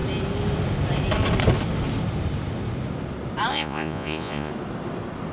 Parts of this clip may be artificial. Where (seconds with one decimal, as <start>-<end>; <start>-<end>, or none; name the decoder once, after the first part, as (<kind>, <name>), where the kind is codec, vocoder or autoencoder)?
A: 3.5-4.5 (vocoder, Vocos)